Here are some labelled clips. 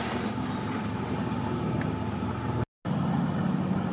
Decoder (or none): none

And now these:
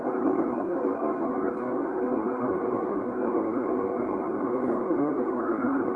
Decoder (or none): codec, SNAC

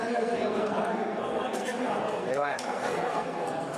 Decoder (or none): codec, SNAC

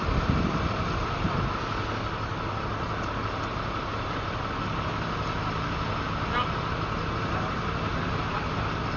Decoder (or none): none